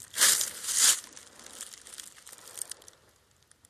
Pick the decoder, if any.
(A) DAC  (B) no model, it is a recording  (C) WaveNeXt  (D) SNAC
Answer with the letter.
B